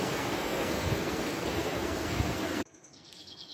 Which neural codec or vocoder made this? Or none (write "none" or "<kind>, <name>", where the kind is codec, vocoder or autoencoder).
codec, SNAC